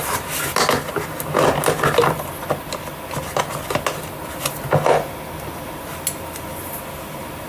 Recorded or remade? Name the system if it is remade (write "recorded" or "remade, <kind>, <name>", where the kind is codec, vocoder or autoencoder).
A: recorded